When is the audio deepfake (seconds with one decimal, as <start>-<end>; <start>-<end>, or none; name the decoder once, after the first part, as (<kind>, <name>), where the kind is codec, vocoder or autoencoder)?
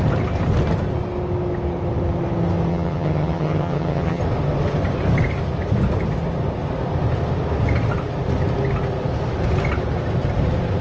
2.7-4.2 (vocoder, HiFi-GAN)